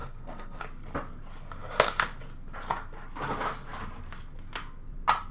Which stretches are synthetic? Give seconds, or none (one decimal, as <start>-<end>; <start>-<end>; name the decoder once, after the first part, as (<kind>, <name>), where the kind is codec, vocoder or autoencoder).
0.0-0.6 (codec, SNAC)